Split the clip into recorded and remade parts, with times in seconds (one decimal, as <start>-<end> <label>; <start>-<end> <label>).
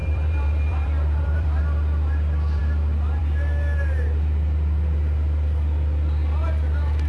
0.0-1.6 remade; 1.6-7.1 recorded